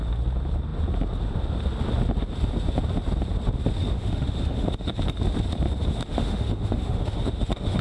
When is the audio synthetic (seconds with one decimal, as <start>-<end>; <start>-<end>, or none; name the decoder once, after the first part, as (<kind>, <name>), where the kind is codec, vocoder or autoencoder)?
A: 3.8-5.0 (autoencoder, DAC-VAE); 5.9-7.8